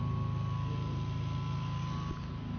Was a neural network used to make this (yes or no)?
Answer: no